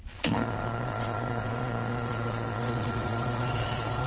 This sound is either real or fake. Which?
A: fake